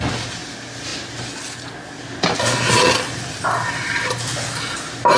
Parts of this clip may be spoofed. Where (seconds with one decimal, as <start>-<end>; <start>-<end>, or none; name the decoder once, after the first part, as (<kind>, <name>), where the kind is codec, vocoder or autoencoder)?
none